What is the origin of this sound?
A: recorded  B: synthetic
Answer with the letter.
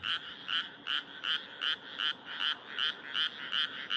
A